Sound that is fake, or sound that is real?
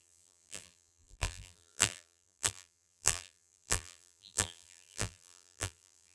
fake